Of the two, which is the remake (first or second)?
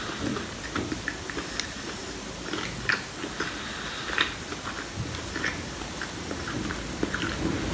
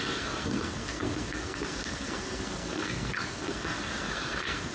second